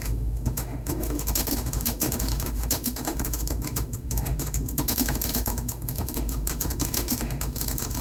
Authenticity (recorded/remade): remade